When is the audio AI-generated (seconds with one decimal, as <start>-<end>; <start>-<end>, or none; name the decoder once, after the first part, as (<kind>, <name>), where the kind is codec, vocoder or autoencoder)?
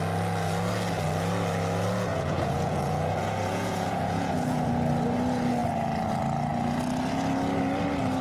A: 2.1-4.7 (vocoder, Vocos)